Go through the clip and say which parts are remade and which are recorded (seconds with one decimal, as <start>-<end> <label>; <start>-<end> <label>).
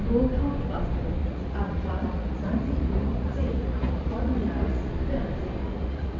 0.0-1.2 recorded; 1.2-4.9 remade; 4.9-5.6 recorded; 5.6-6.2 remade